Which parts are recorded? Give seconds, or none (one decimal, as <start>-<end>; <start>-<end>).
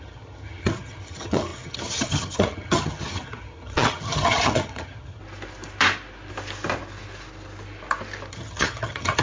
5.2-8.3